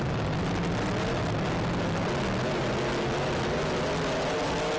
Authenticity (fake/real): real